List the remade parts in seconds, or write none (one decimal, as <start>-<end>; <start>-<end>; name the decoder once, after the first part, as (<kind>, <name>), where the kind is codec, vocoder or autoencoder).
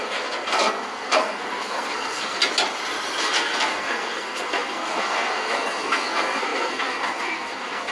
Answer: 0.0-2.4 (codec, SNAC); 3.2-7.9